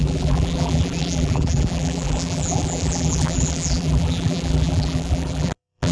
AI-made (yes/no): yes